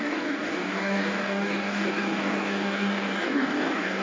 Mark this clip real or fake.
fake